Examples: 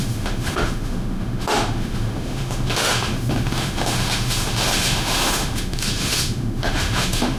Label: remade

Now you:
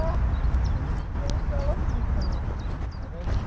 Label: recorded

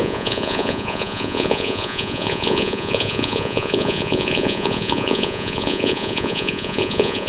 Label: remade